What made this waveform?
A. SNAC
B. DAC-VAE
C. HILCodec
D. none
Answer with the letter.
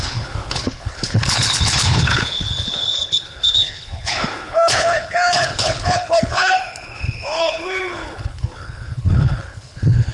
C